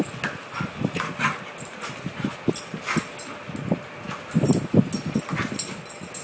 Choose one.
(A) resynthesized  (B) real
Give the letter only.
B